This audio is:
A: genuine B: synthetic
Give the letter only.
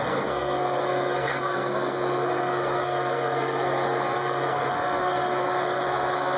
B